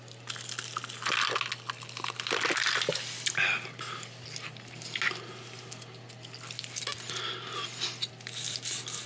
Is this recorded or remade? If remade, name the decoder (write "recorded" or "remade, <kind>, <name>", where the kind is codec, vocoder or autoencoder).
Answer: recorded